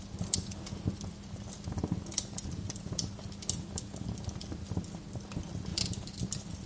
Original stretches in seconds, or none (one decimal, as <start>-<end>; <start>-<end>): 0.0-6.7